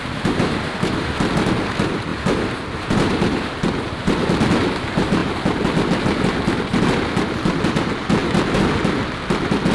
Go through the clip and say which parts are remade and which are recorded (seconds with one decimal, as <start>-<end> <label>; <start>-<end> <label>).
0.0-2.1 recorded; 2.1-3.2 remade; 3.2-9.7 recorded